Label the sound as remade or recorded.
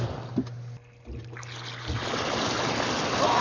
recorded